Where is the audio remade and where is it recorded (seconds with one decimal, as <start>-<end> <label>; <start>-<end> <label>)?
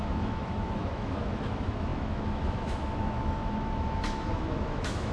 0.0-5.1 remade